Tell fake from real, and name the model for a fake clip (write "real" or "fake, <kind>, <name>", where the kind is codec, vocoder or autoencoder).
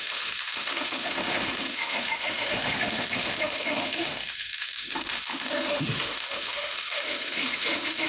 fake, autoencoder, DAC-VAE